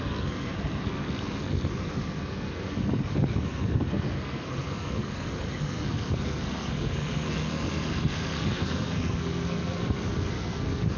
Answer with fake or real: fake